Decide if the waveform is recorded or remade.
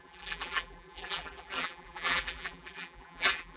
remade